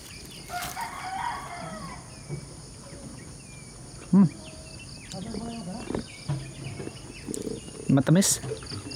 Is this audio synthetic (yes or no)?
no